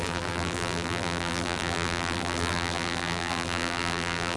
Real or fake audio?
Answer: fake